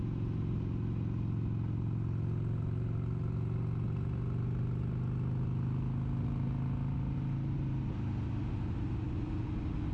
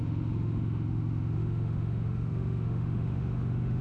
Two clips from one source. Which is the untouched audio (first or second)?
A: first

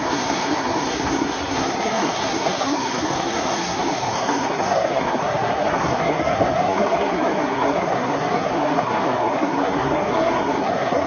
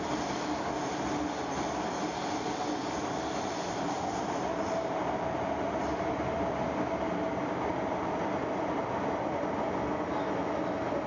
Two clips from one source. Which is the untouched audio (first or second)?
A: second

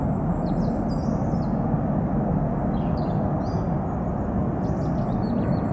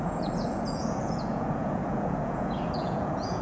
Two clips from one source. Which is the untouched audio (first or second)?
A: first